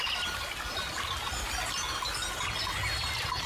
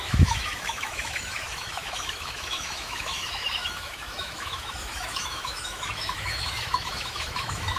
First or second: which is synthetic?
second